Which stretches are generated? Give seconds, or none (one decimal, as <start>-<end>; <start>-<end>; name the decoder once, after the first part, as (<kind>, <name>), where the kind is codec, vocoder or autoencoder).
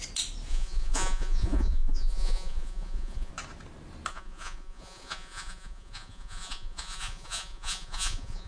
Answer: 0.5-3.3 (vocoder, Vocos); 4.1-8.5